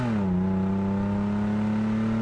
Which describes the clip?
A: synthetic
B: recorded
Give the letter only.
B